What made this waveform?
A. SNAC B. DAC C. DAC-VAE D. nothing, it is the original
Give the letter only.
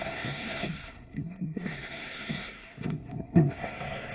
A